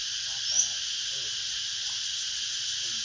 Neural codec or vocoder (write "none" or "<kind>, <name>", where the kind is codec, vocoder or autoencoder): none